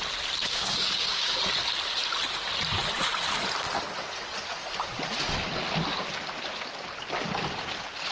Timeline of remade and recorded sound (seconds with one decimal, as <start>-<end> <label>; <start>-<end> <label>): 0.0-0.4 recorded; 0.4-1.4 remade; 1.4-8.1 recorded